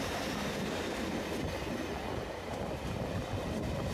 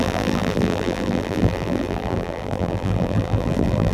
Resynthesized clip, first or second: second